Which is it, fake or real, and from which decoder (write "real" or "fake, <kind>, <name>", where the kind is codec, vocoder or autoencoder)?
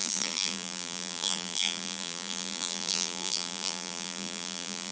fake, vocoder, BigVGAN v2